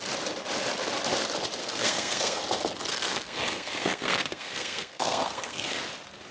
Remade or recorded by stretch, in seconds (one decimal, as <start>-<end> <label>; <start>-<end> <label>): 0.0-1.6 recorded; 1.6-2.4 remade; 2.4-2.9 recorded; 2.9-5.8 remade; 5.8-6.3 recorded